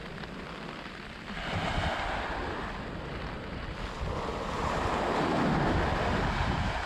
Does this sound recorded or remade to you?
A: recorded